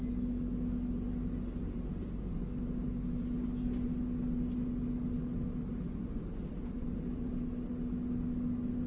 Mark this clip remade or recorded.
recorded